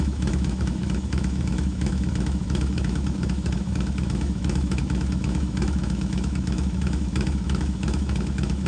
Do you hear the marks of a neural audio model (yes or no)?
yes